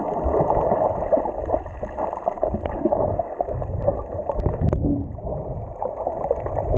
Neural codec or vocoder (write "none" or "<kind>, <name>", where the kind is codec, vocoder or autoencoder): none